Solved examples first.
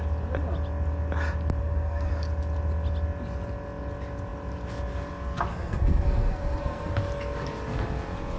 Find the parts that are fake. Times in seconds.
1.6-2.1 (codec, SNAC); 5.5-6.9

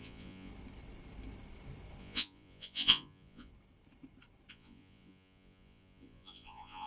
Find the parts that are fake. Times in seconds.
0.0-0.5 (vocoder, Vocos); 2.0-3.5; 4.5-6.9

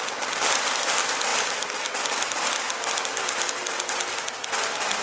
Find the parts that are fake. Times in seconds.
none

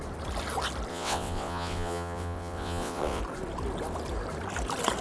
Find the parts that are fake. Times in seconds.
0.9-3.2 (vocoder, WaveNeXt)

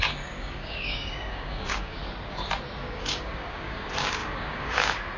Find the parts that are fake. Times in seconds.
0.0-2.0 (codec, DAC); 2.8-5.2

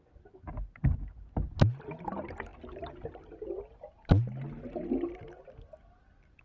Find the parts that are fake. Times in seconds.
none

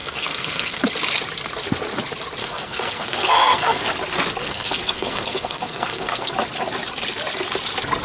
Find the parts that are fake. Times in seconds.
0.0-0.8 (codec, SNAC); 2.4-3.8; 4.4-6.3

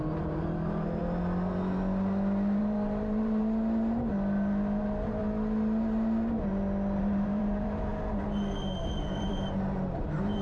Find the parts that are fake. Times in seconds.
0.0-1.0 (vocoder, BigVGAN v2); 2.6-3.4; 4.8-5.2; 7.0-7.9; 8.8-10.4